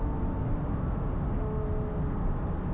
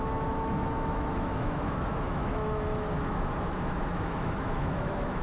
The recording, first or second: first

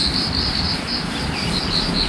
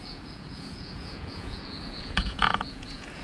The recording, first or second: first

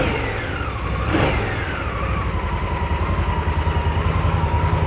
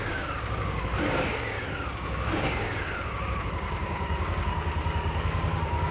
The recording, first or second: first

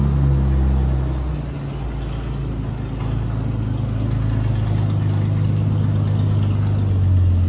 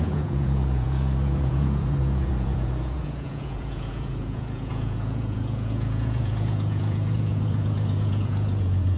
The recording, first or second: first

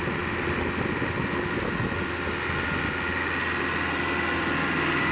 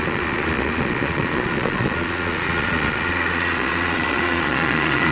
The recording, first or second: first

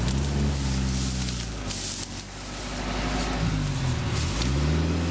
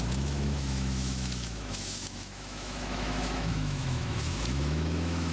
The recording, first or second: first